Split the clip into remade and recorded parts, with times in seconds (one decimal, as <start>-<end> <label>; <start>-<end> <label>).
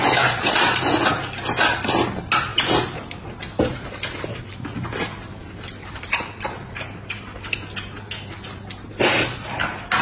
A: 0.0-5.4 recorded; 5.4-6.2 remade; 6.2-10.0 recorded